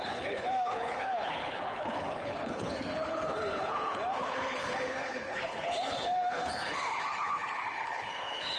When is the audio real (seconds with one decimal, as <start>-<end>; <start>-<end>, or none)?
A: none